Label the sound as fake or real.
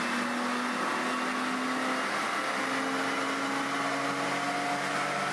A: real